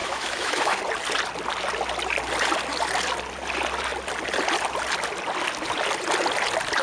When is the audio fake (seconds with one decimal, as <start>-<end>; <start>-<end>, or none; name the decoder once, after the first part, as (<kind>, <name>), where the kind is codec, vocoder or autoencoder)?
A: 0.0-0.8 (autoencoder, DAC-VAE)